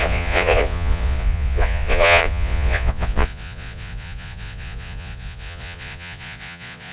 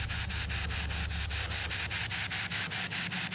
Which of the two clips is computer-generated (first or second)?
first